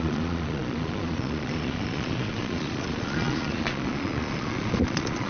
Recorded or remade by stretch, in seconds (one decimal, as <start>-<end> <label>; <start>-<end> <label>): 0.0-5.3 remade